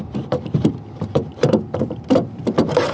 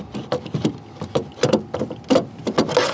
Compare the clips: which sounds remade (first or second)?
first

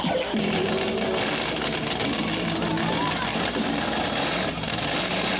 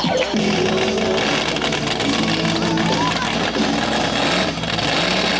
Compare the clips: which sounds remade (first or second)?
first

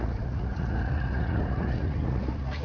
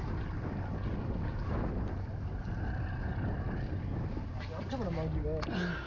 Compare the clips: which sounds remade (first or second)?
first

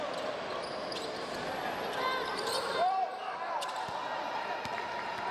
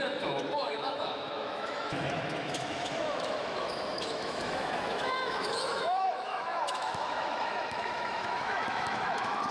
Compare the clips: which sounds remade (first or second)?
second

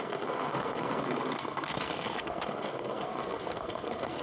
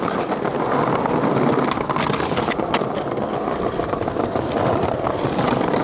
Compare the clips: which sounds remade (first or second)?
first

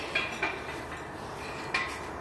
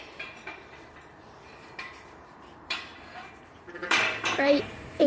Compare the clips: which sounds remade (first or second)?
second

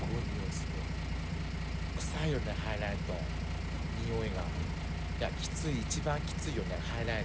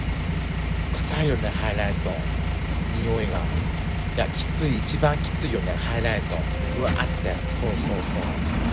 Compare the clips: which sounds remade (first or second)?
second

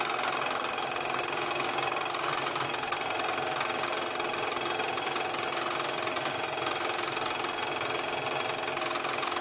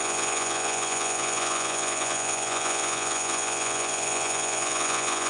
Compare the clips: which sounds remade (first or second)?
second